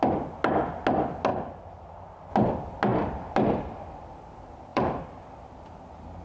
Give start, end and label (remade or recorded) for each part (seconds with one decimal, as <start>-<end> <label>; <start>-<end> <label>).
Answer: 0.0-2.9 recorded; 2.9-4.3 remade; 4.3-4.7 recorded; 4.7-5.8 remade; 5.8-6.2 recorded